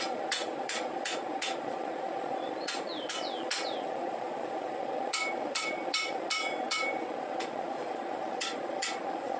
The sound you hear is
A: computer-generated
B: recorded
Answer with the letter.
A